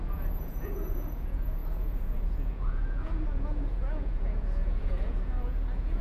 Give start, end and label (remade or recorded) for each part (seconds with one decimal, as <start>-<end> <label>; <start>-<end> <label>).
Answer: 0.0-6.0 remade